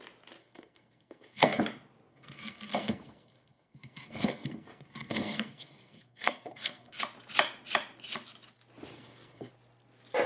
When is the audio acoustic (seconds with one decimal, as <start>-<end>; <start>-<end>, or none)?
0.0-0.4; 1.6-2.1; 7.0-8.9; 9.5-10.3

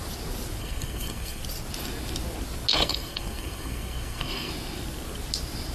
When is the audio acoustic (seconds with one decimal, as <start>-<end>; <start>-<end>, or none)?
0.0-0.6; 1.4-2.7; 4.5-5.7

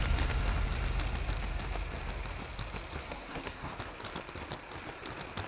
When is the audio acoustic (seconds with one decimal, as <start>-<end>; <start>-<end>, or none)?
0.0-3.0; 3.7-5.5

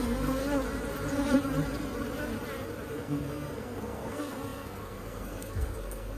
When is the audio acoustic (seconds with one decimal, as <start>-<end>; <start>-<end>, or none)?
0.4-2.9

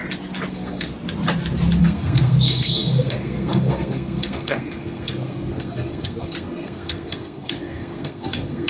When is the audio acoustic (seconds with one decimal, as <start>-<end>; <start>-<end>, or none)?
0.0-0.5; 0.9-1.8